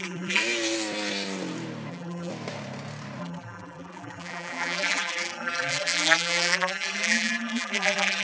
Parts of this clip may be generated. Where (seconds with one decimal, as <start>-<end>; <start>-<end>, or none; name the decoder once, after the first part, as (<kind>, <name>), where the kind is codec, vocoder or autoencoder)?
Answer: 0.0-0.4 (vocoder, BigVGAN v2); 1.9-2.3; 3.2-8.2